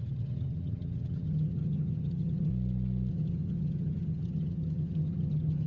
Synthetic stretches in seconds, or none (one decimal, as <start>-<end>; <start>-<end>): 0.0-2.5; 3.1-5.7

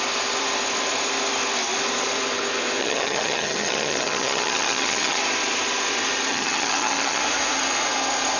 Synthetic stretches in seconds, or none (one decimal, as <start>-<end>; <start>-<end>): 2.8-5.2; 6.3-7.2

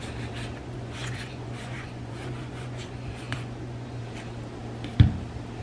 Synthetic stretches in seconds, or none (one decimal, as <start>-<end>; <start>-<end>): 0.6-4.0